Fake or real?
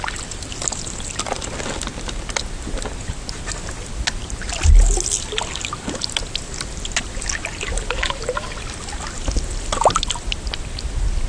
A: real